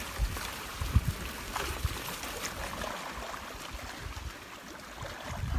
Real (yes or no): yes